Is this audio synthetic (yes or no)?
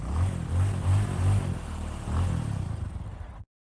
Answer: no